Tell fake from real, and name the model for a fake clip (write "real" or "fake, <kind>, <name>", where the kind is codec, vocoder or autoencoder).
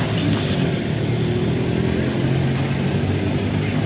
real